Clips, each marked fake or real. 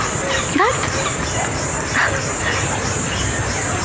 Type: real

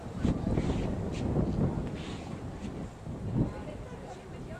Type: real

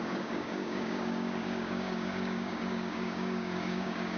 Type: fake